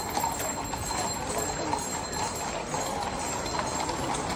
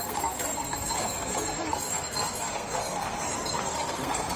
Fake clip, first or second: second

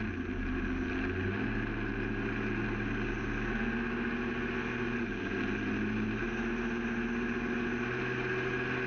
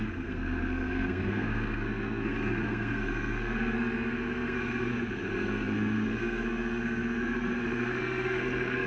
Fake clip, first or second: second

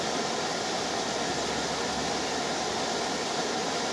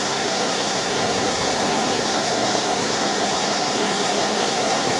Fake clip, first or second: second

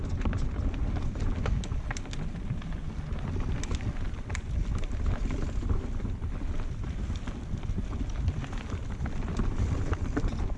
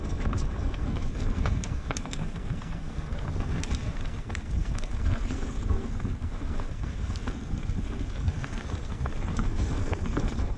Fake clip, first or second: second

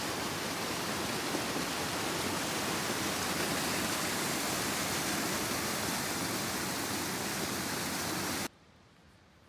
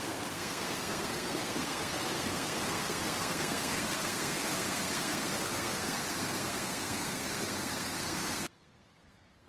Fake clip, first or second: second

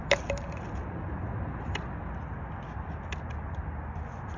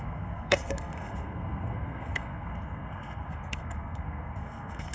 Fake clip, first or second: second